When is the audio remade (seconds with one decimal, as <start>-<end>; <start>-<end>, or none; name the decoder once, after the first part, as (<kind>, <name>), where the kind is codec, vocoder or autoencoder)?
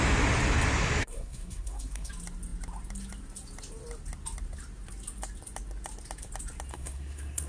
1.0-2.1 (codec, SNAC); 6.7-7.5